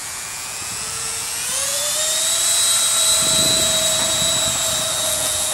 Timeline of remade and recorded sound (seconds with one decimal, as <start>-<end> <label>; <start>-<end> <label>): 0.0-1.8 remade; 1.8-5.1 recorded; 5.1-5.5 remade